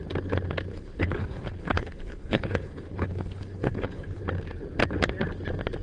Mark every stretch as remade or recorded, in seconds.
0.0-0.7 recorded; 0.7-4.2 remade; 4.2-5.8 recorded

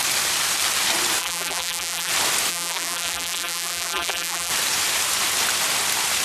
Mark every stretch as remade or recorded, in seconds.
0.0-1.2 recorded; 1.2-2.1 remade; 2.1-2.5 recorded; 2.5-4.5 remade; 4.5-6.2 recorded

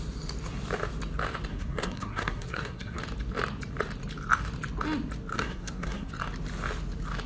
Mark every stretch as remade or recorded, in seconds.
0.0-1.5 recorded; 1.5-3.0 remade; 3.0-5.3 recorded; 5.3-6.1 remade; 6.1-7.3 recorded

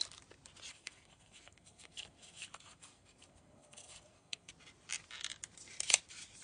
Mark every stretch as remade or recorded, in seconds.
0.0-0.7 recorded; 0.7-4.5 remade; 4.5-6.4 recorded

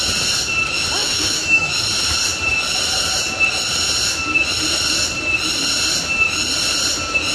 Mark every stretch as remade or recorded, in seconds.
0.0-1.0 recorded; 1.0-1.7 remade; 1.7-7.3 recorded